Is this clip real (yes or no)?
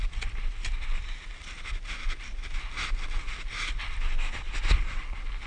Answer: yes